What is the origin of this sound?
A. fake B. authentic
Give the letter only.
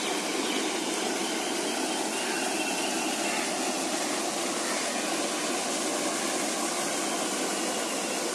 B